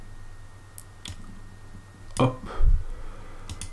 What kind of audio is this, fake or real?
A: real